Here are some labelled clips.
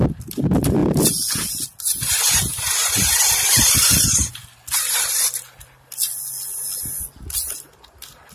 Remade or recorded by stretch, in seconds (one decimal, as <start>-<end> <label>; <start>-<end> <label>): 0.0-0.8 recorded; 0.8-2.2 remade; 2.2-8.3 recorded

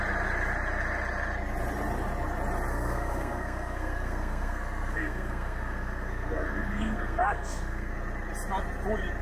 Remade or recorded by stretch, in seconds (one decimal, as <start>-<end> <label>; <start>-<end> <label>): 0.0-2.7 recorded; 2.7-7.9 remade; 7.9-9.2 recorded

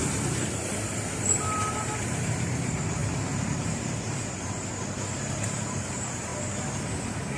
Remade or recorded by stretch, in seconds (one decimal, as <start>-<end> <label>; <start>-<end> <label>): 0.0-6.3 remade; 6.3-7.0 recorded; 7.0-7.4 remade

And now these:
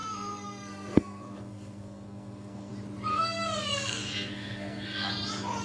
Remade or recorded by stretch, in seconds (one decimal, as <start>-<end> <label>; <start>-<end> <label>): 0.0-2.7 remade; 2.7-3.1 recorded; 3.1-5.1 remade; 5.1-5.6 recorded

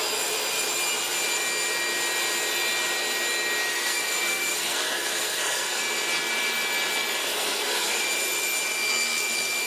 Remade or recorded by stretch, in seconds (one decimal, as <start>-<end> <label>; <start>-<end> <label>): 0.0-3.7 recorded; 3.7-5.8 remade; 5.8-7.2 recorded; 7.2-8.0 remade; 8.0-9.7 recorded

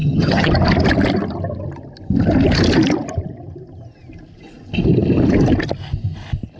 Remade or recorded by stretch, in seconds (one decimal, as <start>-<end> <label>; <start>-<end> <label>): 0.0-0.5 remade; 0.5-6.6 recorded

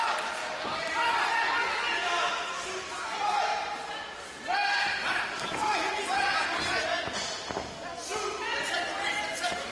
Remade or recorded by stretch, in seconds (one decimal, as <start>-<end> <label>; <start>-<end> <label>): 0.0-9.7 recorded